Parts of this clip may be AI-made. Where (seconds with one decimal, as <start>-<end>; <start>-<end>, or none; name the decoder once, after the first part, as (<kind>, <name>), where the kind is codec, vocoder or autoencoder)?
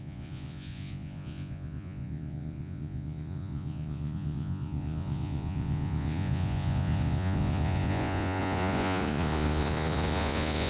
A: 0.0-10.7 (vocoder, Vocos)